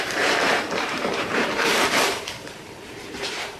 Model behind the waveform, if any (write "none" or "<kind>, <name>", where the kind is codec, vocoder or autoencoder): vocoder, BigVGAN v2